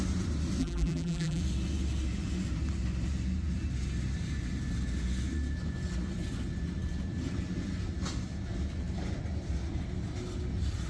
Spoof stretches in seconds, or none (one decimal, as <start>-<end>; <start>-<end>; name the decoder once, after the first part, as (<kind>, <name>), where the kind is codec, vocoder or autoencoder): 0.6-1.4 (vocoder, BigVGAN v2)